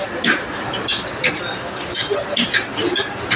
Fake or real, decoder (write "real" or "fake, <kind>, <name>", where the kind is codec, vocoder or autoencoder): real